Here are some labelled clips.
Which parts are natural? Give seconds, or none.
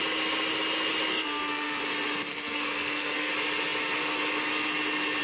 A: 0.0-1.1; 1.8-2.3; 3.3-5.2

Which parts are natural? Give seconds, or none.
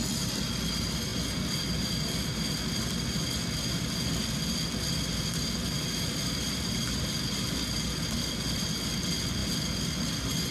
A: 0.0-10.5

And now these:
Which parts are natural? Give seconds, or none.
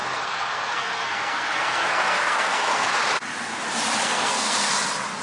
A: 2.9-4.0; 4.7-5.2